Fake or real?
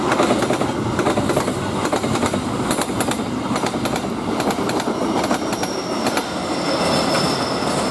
real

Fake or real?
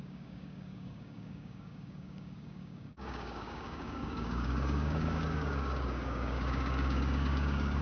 fake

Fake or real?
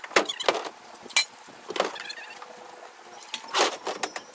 real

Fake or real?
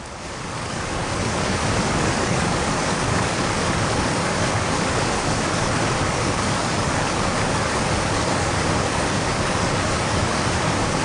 fake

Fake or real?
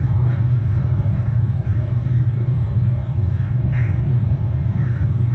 fake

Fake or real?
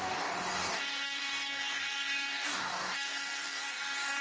fake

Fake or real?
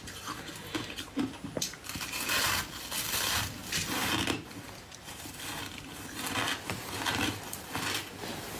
real